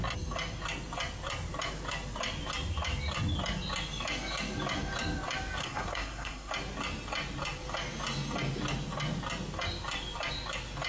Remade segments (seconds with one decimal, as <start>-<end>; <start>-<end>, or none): 5.6-6.5